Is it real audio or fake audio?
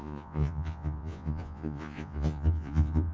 fake